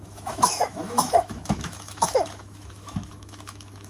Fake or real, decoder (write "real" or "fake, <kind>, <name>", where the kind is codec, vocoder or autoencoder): fake, autoencoder, DAC-VAE